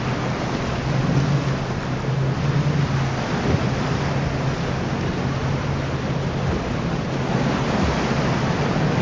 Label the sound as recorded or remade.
recorded